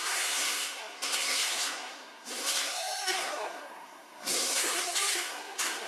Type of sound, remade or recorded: remade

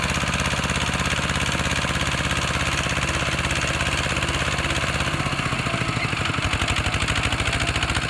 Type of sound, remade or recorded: recorded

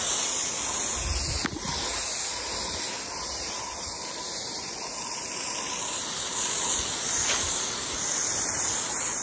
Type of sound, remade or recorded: recorded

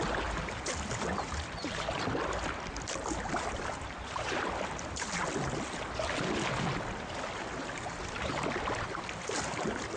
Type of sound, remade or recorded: recorded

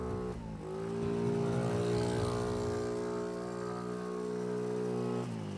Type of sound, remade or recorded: recorded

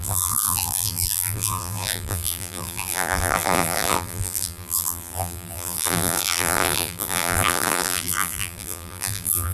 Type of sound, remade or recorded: remade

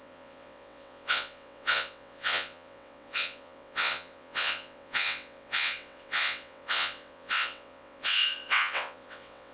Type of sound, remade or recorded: remade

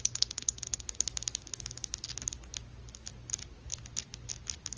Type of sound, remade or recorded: recorded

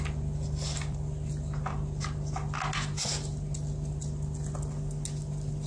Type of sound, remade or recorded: recorded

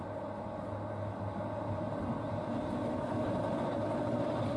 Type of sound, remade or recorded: recorded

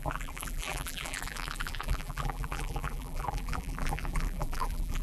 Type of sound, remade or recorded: remade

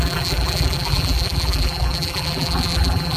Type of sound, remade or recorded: remade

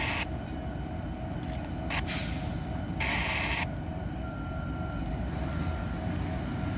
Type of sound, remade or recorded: recorded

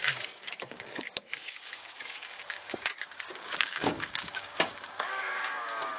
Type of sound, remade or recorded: remade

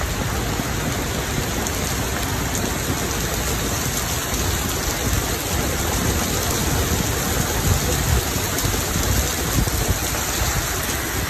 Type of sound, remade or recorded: recorded